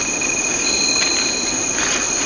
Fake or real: real